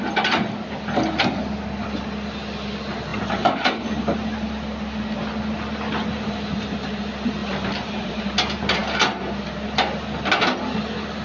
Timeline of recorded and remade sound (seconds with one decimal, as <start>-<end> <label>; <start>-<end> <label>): 0.0-3.1 recorded; 3.1-3.9 remade; 3.9-7.4 recorded; 7.4-8.2 remade; 8.2-11.2 recorded